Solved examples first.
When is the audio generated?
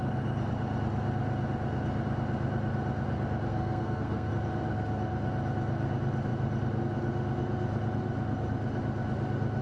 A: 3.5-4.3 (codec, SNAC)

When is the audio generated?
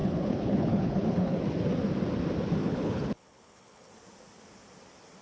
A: 0.0-1.4 (codec, HILCodec); 2.6-3.9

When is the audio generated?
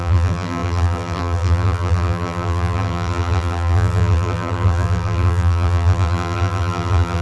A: 0.0-7.2 (vocoder, BigVGAN v2)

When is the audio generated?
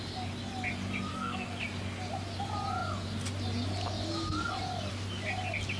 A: 1.1-1.6 (codec, SNAC)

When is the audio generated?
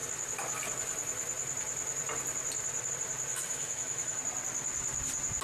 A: 3.3-4.2 (autoencoder, DAC-VAE)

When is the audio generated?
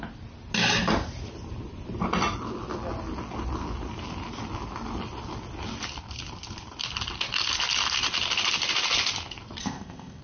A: 9.6-10.2 (codec, ZipCodec)